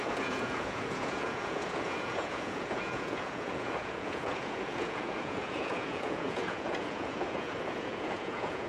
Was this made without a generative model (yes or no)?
no